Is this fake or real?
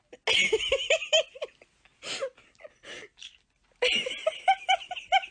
real